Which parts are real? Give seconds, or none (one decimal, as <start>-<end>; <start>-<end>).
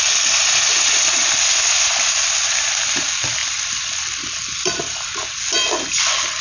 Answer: 1.2-1.8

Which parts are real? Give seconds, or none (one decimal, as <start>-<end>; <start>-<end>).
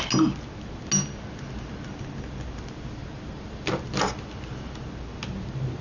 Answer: 0.0-3.0; 3.8-5.8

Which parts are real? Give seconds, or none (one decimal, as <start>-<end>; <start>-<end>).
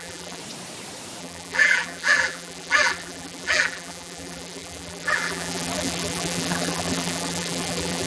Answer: 0.4-1.2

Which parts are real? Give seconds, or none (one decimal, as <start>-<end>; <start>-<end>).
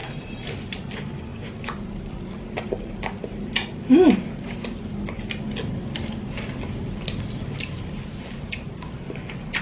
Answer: 0.6-3.2; 4.3-9.6